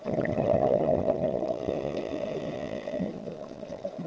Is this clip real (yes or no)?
no